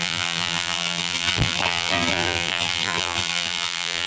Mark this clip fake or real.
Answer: fake